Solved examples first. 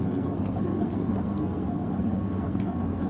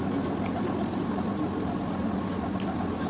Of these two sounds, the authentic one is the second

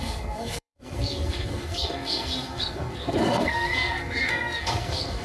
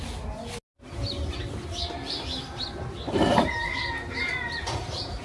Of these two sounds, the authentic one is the second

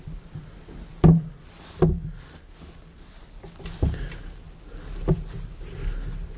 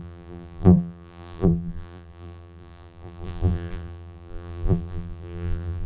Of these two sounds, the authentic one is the first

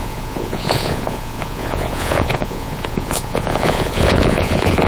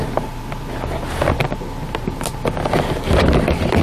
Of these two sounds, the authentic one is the second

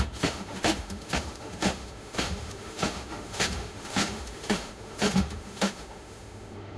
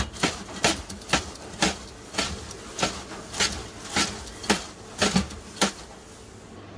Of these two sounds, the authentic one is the second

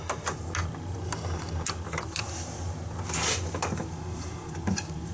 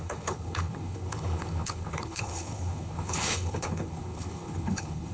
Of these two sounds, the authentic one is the first